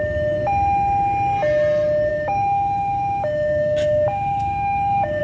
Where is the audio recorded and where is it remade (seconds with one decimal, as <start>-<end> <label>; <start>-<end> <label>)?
0.0-2.1 recorded; 2.1-5.2 remade